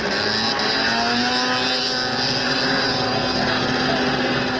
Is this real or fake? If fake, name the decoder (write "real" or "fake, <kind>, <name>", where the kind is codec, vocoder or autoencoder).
real